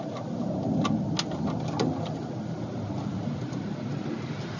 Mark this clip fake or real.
real